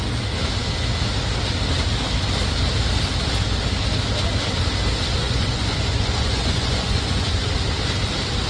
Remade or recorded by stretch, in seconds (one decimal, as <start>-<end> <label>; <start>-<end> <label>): 0.0-5.2 recorded; 5.2-7.5 remade; 7.5-8.5 recorded